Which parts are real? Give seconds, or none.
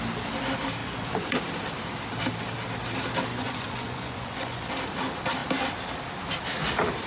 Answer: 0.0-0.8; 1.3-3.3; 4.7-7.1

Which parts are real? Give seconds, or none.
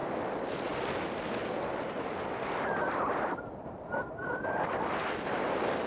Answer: 0.0-5.9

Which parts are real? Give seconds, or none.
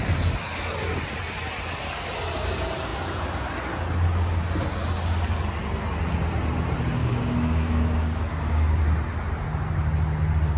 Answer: 0.0-7.0; 8.8-10.6